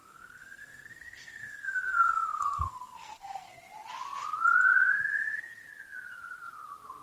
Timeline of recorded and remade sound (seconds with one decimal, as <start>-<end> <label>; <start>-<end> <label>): 0.0-3.6 remade; 3.6-7.0 recorded